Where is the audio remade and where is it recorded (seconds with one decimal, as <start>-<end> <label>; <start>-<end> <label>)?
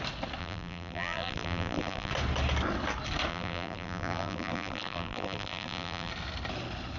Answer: 0.0-0.4 recorded; 0.4-2.1 remade; 2.1-3.3 recorded; 3.3-6.1 remade; 6.1-7.0 recorded